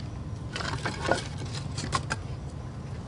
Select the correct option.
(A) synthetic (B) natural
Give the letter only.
B